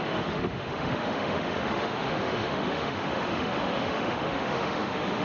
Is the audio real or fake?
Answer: fake